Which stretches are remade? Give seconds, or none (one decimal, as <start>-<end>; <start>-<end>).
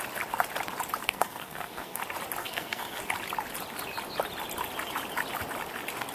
1.0-2.0; 2.4-3.0